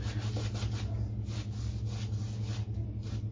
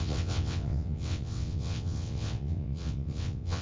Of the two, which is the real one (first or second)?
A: first